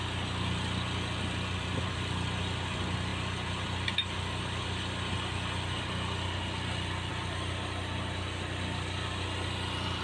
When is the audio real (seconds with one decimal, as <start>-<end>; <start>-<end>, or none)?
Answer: 0.0-10.0